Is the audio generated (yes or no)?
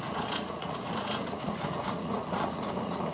yes